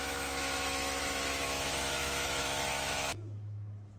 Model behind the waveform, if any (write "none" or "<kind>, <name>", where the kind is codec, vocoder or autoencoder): autoencoder, DAC-VAE